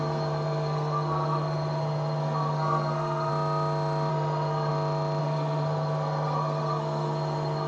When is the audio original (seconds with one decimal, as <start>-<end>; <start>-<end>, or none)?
3.3-4.1; 4.7-5.2